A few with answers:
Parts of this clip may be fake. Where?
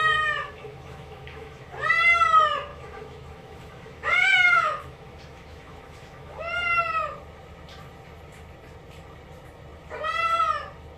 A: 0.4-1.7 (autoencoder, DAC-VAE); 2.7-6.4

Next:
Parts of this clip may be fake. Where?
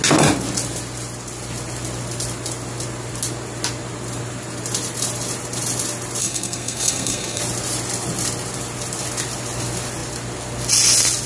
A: 6.2-7.4 (codec, SNAC)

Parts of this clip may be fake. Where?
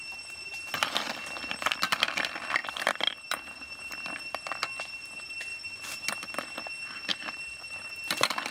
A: 2.6-4.1 (vocoder, BigVGAN v2); 7.1-7.8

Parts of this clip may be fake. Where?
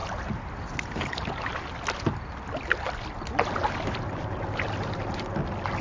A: none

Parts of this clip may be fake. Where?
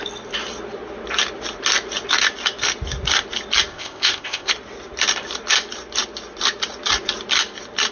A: 3.7-4.5 (codec, ZipCodec)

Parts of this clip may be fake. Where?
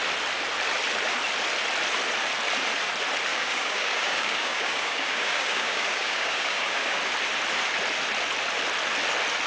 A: 3.3-7.0 (codec, DAC)